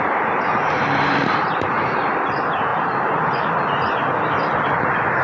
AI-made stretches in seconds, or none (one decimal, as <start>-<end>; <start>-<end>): 1.2-1.7; 2.7-3.6